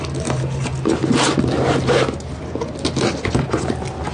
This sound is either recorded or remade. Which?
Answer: recorded